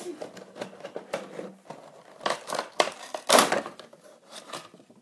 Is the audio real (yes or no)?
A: yes